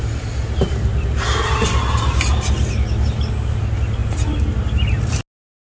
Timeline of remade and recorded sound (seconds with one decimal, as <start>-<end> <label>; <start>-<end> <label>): 0.0-5.6 recorded